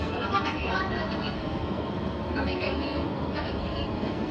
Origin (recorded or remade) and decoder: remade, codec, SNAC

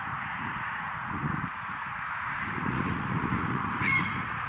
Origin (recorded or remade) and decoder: remade, vocoder, Vocos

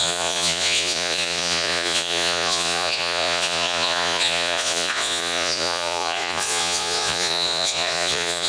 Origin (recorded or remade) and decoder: remade, vocoder, Vocos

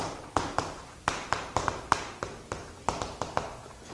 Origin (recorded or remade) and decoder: remade, vocoder, BigVGAN v2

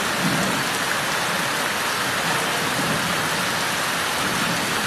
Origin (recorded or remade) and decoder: recorded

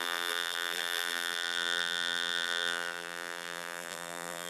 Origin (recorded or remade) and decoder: remade, vocoder, BigVGAN v2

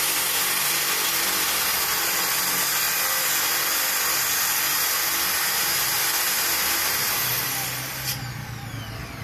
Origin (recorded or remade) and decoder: recorded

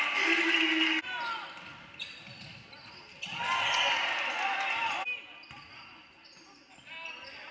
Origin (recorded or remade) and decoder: recorded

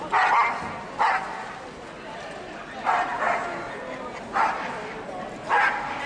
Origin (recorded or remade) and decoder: recorded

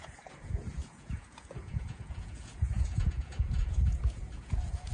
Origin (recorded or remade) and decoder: remade, vocoder, Vocos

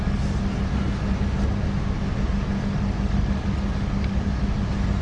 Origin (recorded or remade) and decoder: recorded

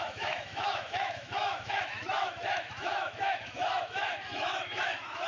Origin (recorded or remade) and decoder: remade, autoencoder, DAC-VAE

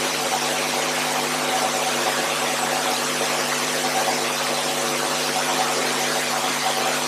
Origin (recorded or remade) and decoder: remade, vocoder, BigVGAN v2